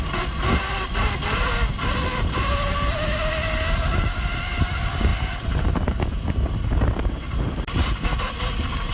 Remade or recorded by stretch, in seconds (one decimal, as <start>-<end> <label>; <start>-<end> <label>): 0.0-8.9 recorded